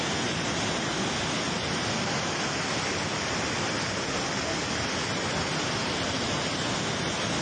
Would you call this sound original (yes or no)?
yes